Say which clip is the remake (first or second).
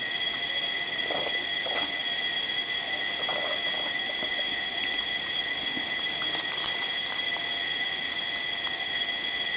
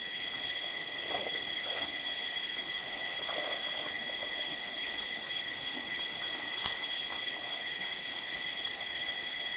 second